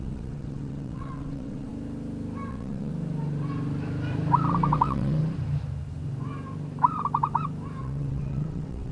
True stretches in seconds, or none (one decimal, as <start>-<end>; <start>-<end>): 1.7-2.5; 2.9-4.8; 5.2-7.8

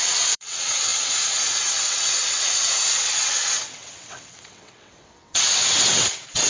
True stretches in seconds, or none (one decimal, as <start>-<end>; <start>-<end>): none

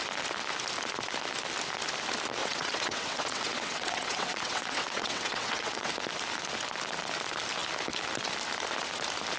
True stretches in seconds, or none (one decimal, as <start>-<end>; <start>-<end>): 0.0-2.4; 5.9-9.4

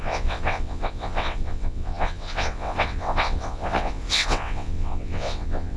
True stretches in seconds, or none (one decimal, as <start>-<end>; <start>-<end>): none

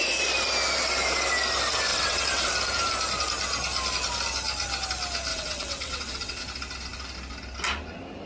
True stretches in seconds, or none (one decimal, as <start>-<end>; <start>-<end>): 0.0-1.9; 2.5-5.3; 6.4-8.3

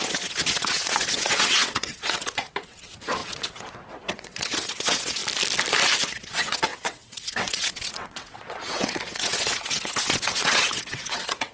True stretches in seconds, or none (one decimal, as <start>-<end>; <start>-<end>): 5.2-6.1

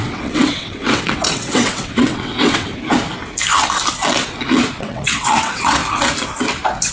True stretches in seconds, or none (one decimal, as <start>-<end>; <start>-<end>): 2.7-4.8; 5.8-6.9

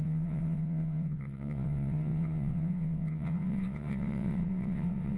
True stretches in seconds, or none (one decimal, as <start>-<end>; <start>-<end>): none